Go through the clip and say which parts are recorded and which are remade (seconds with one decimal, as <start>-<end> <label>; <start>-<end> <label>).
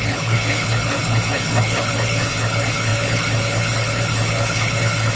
0.0-5.2 remade